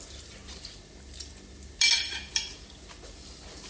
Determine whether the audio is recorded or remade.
recorded